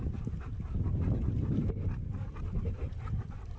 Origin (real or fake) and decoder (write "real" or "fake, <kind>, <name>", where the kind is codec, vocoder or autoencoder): real